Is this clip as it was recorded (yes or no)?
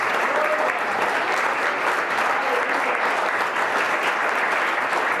yes